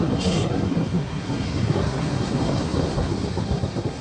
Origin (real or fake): fake